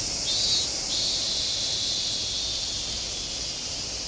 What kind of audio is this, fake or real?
real